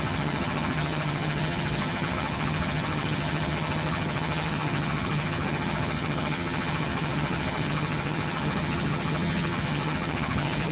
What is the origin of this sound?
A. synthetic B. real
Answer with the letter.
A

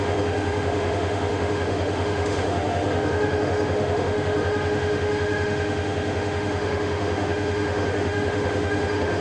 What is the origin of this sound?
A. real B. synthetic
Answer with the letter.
B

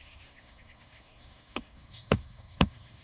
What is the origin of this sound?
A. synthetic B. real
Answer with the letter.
A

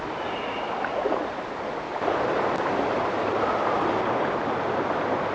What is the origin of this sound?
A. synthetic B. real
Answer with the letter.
B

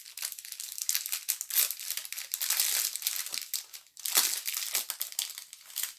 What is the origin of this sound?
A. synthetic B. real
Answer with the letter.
B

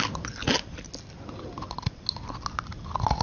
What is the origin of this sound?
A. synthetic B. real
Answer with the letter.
B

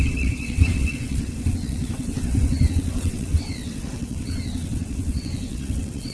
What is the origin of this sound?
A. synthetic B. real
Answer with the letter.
A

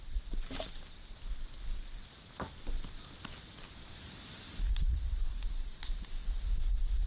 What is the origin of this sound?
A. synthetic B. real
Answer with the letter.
B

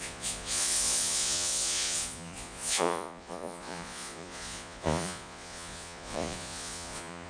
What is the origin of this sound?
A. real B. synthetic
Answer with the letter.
B